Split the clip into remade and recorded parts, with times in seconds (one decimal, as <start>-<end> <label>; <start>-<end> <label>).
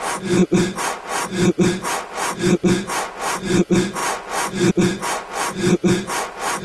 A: 0.0-0.4 remade; 0.4-2.4 recorded; 2.4-6.6 remade